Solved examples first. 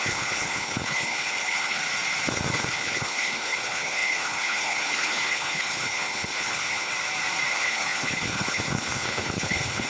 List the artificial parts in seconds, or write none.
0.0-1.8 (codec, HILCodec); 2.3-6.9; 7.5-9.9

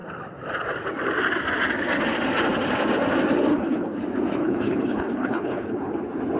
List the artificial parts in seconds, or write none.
3.5-4.0 (codec, HILCodec); 4.4-6.0

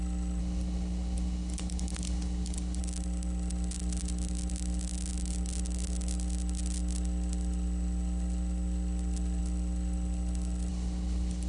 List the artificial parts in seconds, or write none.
0.4-2.8 (codec, HILCodec); 10.7-11.5

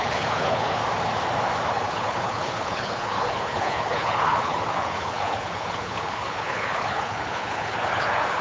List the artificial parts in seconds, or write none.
0.0-0.8 (codec, HILCodec); 1.7-8.4

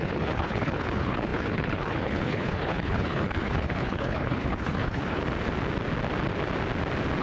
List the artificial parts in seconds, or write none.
0.0-5.2 (codec, HILCodec)